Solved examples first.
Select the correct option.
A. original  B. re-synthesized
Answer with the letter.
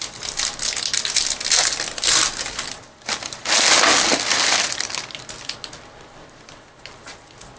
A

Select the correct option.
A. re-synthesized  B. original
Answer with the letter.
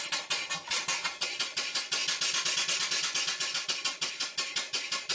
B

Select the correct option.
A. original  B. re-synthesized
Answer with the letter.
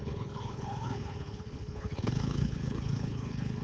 B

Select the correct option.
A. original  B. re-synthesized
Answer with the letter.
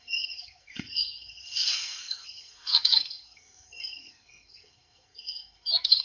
B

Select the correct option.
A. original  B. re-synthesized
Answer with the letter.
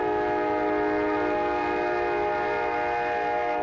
A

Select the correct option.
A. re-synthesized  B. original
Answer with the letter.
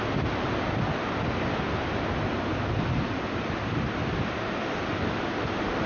B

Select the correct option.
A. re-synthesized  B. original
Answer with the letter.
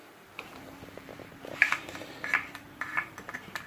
A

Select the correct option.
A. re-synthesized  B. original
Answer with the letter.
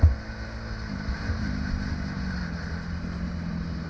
B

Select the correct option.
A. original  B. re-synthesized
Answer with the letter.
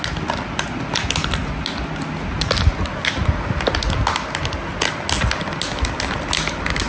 A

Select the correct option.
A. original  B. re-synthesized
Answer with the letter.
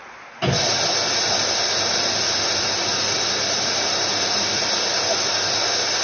A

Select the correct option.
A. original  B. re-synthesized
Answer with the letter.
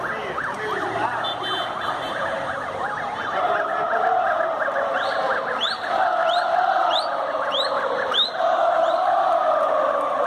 A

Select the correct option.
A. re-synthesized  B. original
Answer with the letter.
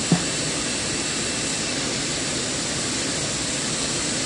B